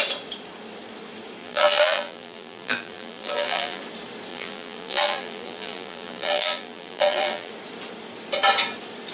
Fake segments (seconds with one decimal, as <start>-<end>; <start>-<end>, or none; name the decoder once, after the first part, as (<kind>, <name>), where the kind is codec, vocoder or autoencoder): 1.4-3.8 (vocoder, BigVGAN v2); 4.3-7.5